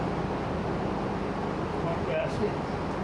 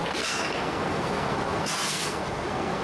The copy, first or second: second